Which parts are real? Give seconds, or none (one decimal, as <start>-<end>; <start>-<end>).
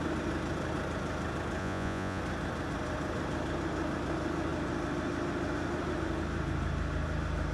0.0-1.6; 2.2-7.5